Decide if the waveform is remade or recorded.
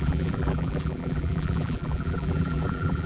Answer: remade